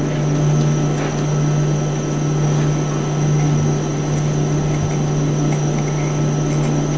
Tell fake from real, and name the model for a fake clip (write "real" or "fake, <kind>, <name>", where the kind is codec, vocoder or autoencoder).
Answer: real